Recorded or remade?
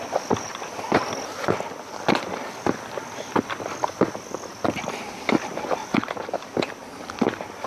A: recorded